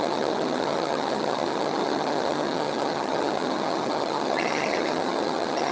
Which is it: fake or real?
fake